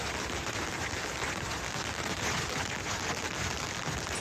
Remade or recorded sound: recorded